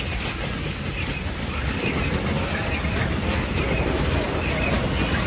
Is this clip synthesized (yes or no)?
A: no